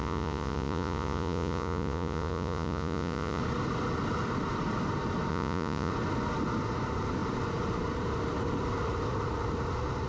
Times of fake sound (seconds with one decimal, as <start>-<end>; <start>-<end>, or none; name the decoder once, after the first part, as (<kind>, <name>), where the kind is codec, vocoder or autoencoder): 0.0-3.4 (vocoder, Vocos); 5.3-5.9